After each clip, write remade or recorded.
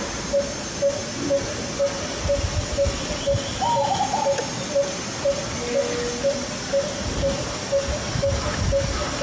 recorded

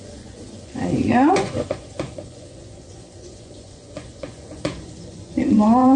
remade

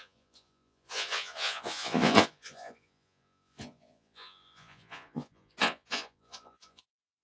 remade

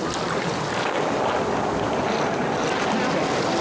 recorded